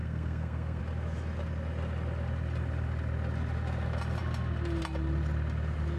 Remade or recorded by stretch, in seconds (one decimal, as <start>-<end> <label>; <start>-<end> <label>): 0.0-0.8 remade; 0.8-6.0 recorded

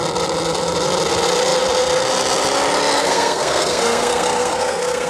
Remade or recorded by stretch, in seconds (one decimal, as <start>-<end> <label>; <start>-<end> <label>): 0.0-3.0 recorded; 3.0-5.1 remade

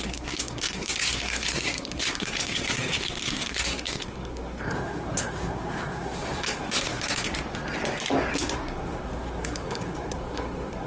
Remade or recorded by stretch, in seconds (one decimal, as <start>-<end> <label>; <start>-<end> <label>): 0.0-7.3 remade; 7.3-8.3 recorded; 8.3-10.9 remade

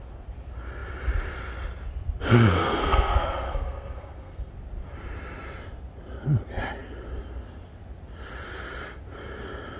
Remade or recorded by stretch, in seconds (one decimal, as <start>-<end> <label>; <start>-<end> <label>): 0.0-2.6 recorded; 2.6-4.5 remade; 4.5-9.8 recorded

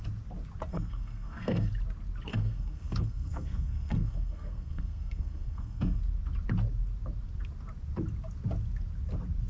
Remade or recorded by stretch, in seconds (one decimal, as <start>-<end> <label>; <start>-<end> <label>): 0.0-0.7 recorded; 0.7-1.7 remade; 1.7-2.3 recorded; 2.3-6.0 remade; 6.0-9.5 recorded

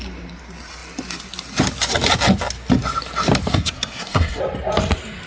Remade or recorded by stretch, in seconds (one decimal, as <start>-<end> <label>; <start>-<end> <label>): 0.0-3.5 recorded; 3.5-4.4 remade; 4.4-5.3 recorded

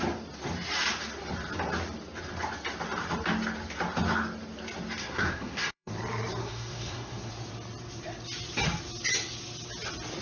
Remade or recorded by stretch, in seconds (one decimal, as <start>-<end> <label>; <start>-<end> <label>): 0.0-5.0 recorded; 5.0-5.9 remade; 5.9-6.4 recorded; 6.4-7.3 remade; 7.3-10.2 recorded

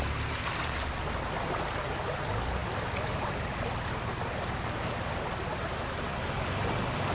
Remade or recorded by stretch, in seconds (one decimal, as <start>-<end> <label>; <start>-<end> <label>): 0.0-7.1 recorded